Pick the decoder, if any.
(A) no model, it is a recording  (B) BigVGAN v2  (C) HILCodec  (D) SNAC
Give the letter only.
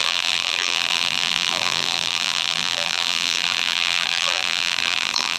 B